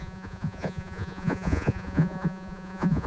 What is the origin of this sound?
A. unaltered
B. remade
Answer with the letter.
B